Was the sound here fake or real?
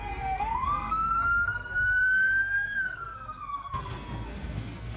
fake